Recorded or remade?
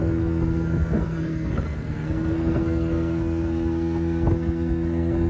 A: remade